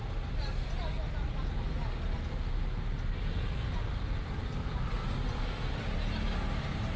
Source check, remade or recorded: recorded